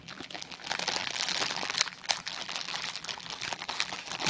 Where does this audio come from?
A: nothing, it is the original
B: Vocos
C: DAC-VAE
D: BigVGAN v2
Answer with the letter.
D